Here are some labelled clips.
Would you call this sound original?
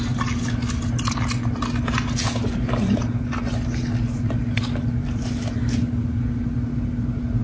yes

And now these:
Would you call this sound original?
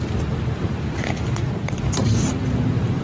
no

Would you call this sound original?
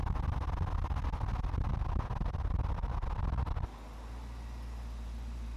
yes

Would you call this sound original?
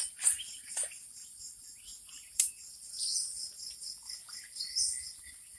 yes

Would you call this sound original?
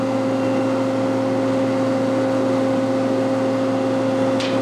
yes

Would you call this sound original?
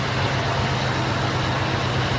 yes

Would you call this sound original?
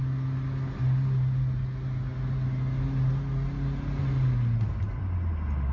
yes